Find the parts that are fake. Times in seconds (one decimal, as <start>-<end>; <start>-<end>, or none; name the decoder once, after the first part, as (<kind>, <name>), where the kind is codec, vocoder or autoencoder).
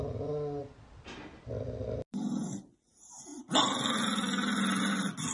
none